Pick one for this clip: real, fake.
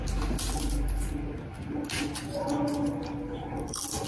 real